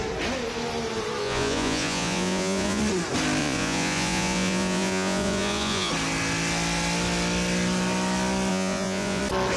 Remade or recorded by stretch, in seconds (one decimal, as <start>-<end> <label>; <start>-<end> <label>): 0.0-1.2 recorded; 1.2-2.8 remade; 2.8-3.4 recorded; 3.4-5.9 remade; 5.9-8.5 recorded; 8.5-9.2 remade; 9.2-9.6 recorded